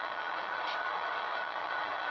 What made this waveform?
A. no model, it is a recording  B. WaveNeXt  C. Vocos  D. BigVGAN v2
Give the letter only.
B